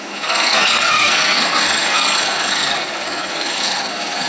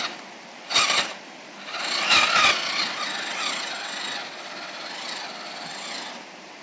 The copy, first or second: first